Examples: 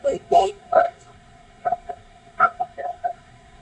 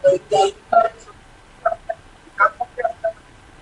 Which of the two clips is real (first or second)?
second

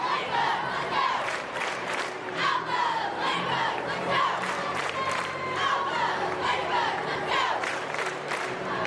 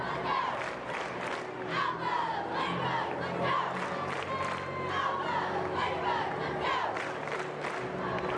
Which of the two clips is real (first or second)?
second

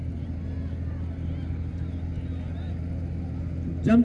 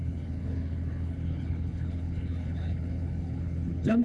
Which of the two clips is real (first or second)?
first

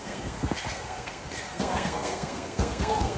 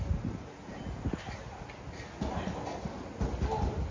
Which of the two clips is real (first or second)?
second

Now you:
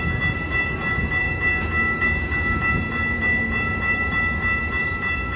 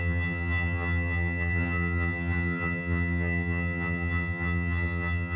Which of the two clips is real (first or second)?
first